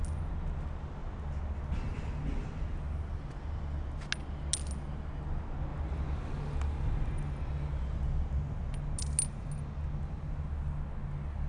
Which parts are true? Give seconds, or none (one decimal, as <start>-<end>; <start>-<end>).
0.0-11.5